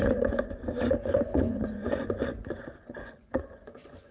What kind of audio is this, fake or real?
fake